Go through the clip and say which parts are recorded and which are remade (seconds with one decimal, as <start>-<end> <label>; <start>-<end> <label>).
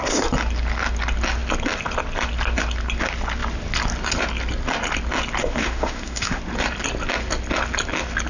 0.0-5.4 recorded; 5.4-6.4 remade; 6.4-8.3 recorded